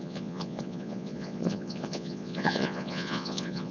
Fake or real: fake